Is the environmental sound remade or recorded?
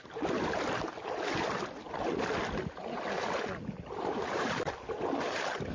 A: recorded